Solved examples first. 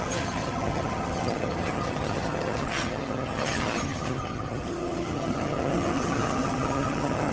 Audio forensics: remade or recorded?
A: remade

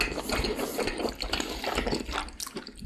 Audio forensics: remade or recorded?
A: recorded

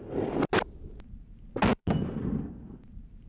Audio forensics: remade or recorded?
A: recorded